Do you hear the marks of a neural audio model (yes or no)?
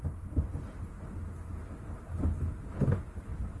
no